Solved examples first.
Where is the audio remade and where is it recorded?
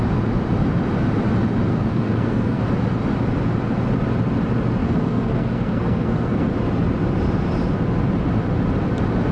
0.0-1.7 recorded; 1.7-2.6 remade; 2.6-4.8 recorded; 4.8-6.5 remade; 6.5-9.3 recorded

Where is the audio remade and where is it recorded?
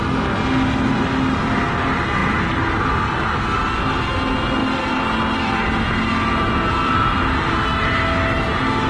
0.0-4.6 recorded; 4.6-5.6 remade; 5.6-6.8 recorded; 6.8-7.4 remade; 7.4-8.9 recorded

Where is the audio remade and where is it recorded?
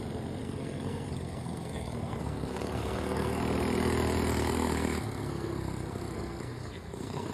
0.0-0.4 recorded; 0.4-3.4 remade; 3.4-4.4 recorded; 4.4-7.3 remade